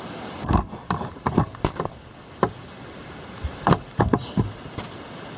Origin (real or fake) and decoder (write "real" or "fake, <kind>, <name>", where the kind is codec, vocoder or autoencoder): real